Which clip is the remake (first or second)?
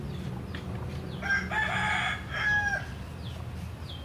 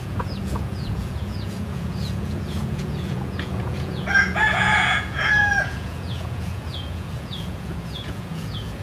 second